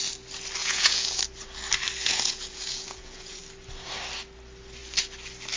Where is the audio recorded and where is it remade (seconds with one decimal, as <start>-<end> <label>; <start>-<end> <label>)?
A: 0.0-0.6 recorded; 0.6-1.2 remade; 1.2-2.0 recorded; 2.0-3.4 remade; 3.4-5.6 recorded